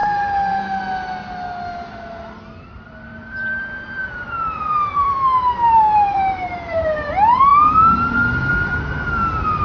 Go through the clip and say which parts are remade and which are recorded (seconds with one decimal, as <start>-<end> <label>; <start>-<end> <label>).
0.0-0.8 remade; 0.8-3.1 recorded; 3.1-7.1 remade; 7.1-7.5 recorded; 7.5-8.1 remade; 8.1-9.6 recorded